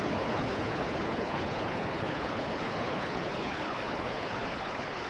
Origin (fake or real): fake